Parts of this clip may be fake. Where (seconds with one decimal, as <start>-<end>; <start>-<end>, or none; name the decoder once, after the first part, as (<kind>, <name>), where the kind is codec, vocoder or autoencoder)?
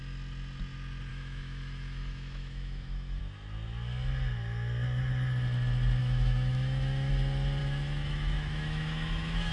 1.1-3.2 (autoencoder, DAC-VAE); 6.0-7.1; 7.6-9.5